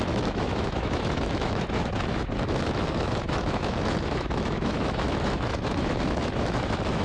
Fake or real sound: fake